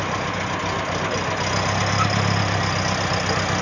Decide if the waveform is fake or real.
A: real